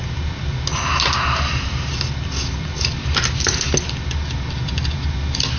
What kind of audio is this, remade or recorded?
recorded